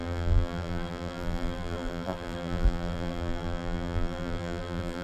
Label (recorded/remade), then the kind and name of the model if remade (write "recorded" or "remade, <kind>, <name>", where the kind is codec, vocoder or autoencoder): remade, vocoder, BigVGAN v2